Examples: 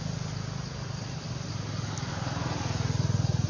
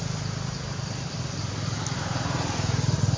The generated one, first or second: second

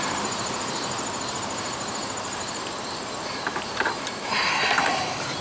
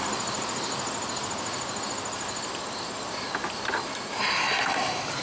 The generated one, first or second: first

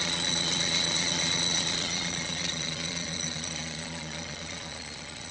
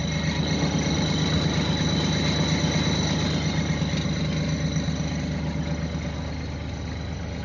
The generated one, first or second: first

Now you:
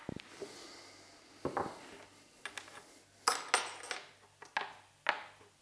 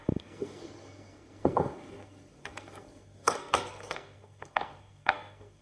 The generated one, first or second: second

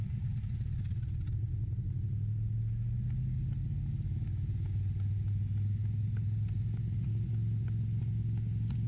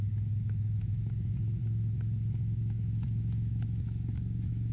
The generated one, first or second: second